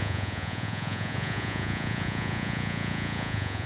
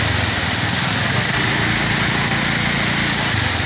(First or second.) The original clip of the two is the second